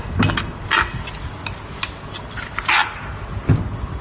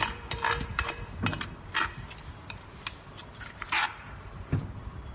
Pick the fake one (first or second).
second